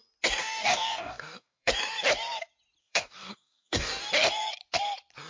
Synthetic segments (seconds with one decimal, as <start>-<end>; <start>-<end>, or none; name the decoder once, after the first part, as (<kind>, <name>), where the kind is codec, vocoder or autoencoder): 0.4-1.7 (codec, DAC); 2.8-4.1